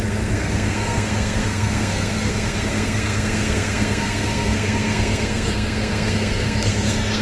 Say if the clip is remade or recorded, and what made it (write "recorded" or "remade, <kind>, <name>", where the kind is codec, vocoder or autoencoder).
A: remade, codec, SNAC